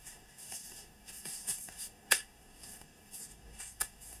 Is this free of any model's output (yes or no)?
no